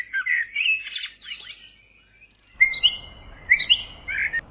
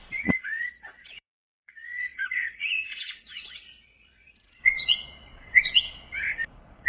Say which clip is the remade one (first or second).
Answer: second